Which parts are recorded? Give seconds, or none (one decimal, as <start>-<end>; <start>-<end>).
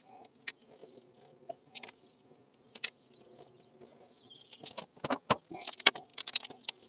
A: 0.0-6.9